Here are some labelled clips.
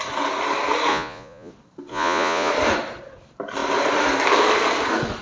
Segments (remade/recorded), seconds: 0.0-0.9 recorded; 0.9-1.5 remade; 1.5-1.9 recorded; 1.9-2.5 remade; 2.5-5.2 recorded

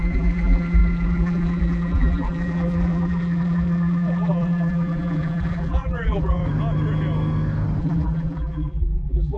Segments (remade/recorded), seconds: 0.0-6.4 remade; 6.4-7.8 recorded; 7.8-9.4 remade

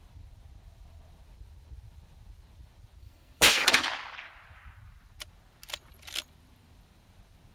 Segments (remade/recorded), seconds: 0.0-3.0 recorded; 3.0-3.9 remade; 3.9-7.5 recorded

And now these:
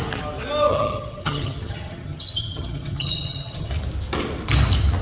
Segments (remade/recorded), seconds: 0.0-0.7 recorded; 0.7-3.7 remade; 3.7-5.0 recorded

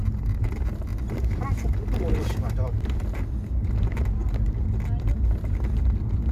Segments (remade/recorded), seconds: 0.0-6.3 recorded